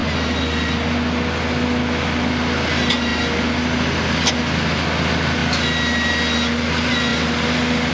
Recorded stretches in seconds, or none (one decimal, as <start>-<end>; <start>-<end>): 0.0-7.9